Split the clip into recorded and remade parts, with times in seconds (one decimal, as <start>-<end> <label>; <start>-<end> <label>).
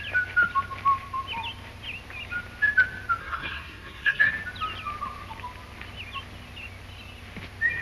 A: 0.0-3.2 recorded; 3.2-4.3 remade; 4.3-7.8 recorded